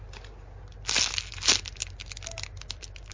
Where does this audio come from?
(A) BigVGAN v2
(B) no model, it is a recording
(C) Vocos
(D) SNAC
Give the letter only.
B